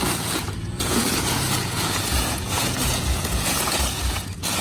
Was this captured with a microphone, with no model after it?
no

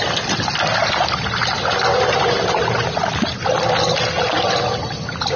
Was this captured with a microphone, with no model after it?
yes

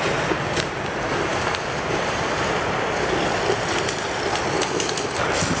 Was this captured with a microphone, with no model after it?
yes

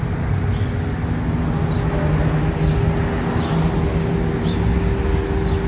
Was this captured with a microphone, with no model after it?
yes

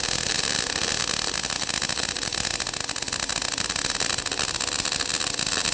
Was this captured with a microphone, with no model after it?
yes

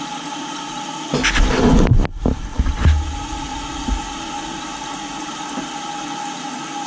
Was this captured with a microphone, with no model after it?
yes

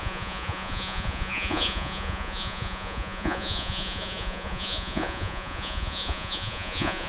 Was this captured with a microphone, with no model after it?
no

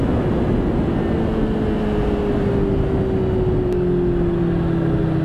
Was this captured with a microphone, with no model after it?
yes